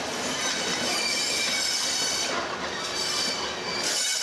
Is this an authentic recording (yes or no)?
yes